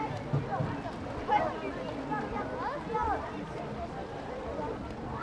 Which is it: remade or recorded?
recorded